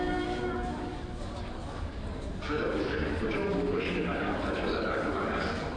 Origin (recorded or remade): remade